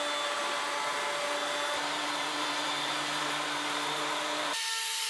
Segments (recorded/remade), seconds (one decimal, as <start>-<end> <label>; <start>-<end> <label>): 0.0-1.4 recorded; 1.4-4.5 remade; 4.5-5.1 recorded